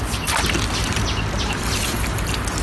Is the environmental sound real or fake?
real